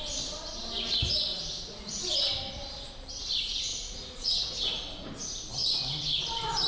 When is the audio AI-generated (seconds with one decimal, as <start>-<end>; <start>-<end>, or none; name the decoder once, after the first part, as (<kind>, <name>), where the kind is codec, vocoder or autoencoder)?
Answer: 1.3-2.0 (vocoder, Vocos); 3.7-5.1